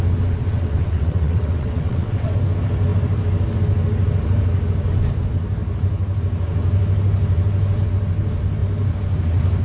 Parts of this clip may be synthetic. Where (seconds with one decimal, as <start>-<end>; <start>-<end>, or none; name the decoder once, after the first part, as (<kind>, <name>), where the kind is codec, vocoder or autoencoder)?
0.4-2.3 (vocoder, WaveNeXt)